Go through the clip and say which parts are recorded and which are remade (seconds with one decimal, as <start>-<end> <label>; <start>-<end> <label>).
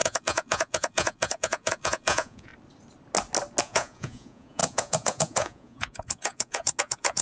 0.0-2.5 remade; 2.5-3.6 recorded; 3.6-7.2 remade